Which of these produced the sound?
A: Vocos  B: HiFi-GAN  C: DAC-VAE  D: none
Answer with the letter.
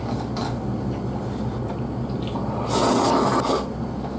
D